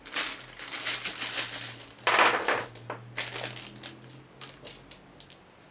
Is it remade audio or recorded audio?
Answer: recorded